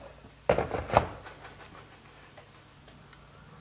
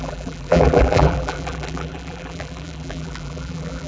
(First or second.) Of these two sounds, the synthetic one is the second